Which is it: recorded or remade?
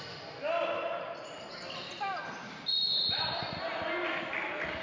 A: recorded